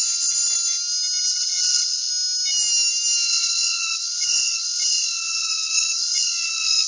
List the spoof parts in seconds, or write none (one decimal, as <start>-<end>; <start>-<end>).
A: 1.3-2.1; 3.3-6.9